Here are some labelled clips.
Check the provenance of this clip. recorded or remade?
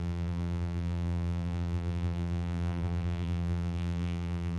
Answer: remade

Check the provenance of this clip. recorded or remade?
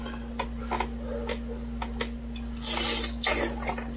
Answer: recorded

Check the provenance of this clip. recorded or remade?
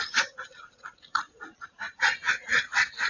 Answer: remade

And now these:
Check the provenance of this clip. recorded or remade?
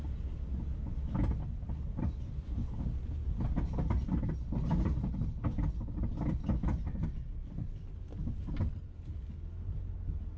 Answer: recorded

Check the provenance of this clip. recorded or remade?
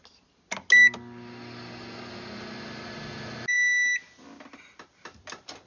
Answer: recorded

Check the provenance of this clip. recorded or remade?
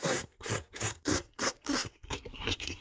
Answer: remade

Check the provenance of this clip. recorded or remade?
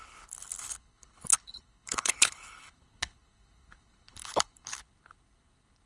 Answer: remade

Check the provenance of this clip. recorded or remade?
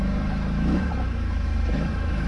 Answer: remade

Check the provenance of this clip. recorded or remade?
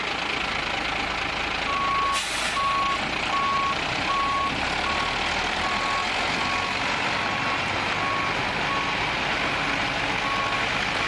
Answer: recorded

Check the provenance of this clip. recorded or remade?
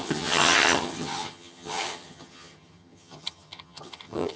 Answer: remade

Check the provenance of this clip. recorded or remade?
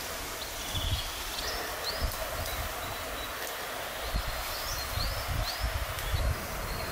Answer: recorded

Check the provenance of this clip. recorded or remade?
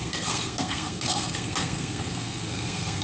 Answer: remade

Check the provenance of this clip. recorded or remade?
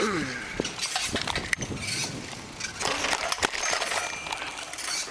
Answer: recorded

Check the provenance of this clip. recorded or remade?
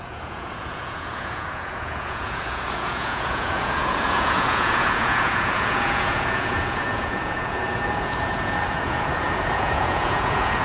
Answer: remade